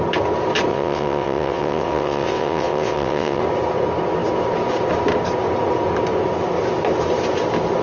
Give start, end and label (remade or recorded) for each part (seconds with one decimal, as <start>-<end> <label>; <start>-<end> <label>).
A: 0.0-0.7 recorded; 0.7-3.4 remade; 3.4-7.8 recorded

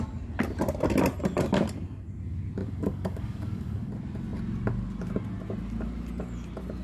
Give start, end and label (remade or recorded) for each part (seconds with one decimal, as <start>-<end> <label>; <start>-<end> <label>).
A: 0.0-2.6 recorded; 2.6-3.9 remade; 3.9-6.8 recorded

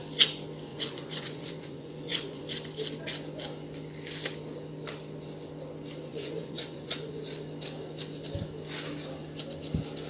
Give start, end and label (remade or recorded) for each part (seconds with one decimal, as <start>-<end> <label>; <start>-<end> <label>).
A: 0.0-0.7 recorded; 0.7-2.4 remade; 2.4-6.1 recorded; 6.1-7.2 remade; 7.2-10.1 recorded